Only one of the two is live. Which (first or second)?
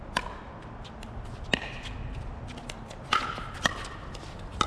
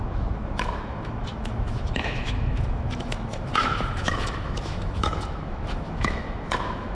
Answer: first